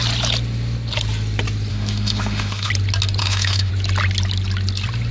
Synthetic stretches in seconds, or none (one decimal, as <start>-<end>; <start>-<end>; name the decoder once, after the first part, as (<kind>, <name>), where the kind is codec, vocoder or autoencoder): 1.7-2.7 (autoencoder, DAC-VAE); 3.2-3.7